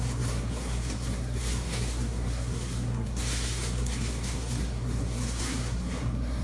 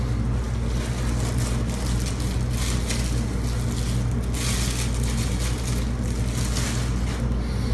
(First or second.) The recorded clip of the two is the second